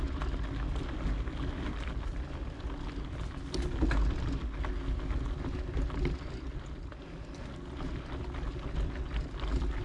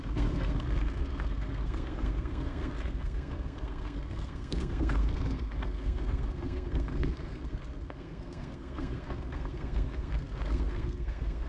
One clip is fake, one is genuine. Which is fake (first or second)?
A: second